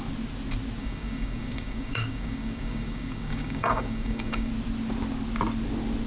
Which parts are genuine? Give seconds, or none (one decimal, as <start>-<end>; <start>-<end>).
0.0-0.8; 4.5-6.1